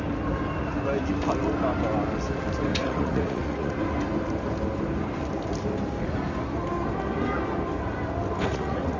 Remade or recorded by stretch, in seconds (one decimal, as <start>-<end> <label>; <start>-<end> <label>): 0.0-2.7 recorded; 2.7-3.7 remade; 3.7-8.5 recorded; 8.5-9.0 remade